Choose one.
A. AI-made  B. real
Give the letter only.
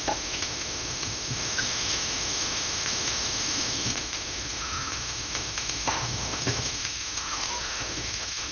A